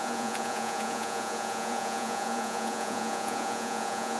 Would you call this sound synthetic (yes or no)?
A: yes